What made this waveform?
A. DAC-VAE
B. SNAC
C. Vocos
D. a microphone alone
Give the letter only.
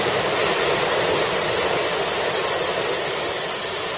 D